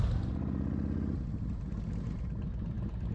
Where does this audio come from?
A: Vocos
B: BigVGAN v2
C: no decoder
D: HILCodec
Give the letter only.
C